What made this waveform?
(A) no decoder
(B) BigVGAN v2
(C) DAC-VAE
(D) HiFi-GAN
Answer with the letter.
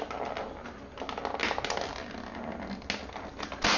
A